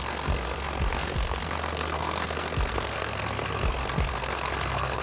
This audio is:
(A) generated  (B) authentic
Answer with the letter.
A